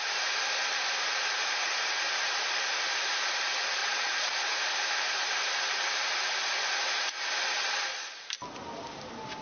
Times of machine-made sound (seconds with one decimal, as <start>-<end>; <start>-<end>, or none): 3.8-4.3